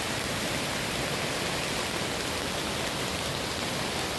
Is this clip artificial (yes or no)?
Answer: no